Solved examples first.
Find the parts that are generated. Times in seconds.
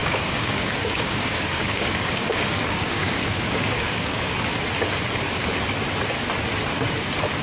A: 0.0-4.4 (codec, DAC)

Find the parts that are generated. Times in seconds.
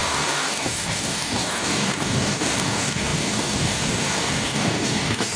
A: 0.0-5.4 (codec, DAC)